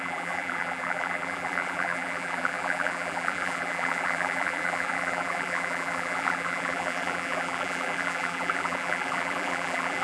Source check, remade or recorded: remade